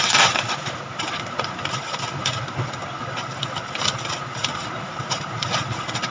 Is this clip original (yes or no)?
yes